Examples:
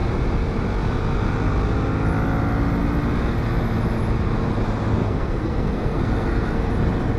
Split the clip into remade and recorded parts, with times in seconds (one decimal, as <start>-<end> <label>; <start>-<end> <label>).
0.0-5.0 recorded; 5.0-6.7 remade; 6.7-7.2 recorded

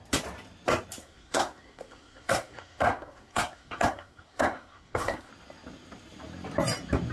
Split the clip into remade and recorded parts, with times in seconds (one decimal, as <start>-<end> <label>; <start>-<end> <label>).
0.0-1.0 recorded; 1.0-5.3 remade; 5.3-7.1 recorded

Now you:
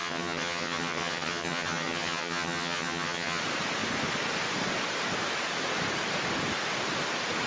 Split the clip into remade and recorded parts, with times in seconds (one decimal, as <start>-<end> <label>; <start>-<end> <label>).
0.0-3.4 remade; 3.4-7.5 recorded